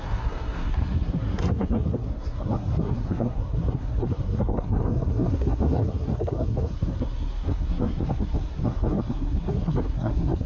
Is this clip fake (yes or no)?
yes